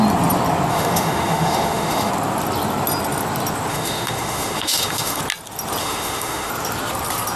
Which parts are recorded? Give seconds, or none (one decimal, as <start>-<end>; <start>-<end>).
0.0-0.7; 2.1-3.7; 5.2-5.8; 6.5-7.4